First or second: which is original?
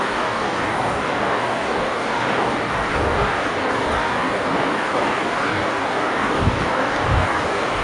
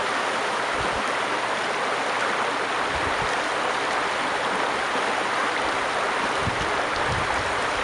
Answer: second